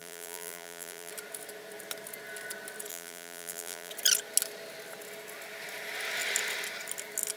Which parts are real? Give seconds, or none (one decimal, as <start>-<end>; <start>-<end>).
1.1-2.9; 3.9-7.4